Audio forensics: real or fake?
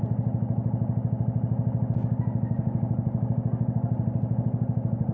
real